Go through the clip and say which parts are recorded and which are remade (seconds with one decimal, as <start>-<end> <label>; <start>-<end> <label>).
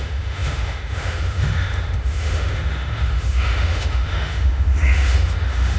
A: 0.0-5.8 remade